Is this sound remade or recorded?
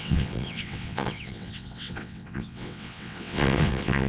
remade